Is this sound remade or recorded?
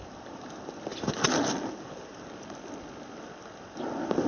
recorded